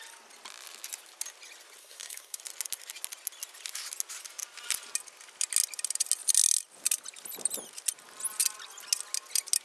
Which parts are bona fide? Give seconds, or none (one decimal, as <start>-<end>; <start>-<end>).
0.0-1.8; 2.4-9.6